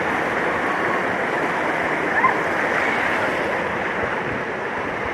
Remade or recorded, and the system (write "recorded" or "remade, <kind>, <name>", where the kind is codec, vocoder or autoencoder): recorded